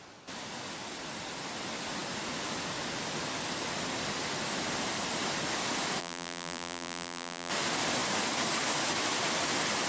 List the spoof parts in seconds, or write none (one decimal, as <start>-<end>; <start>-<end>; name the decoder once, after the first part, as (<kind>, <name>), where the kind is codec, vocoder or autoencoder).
6.0-7.5 (vocoder, BigVGAN v2)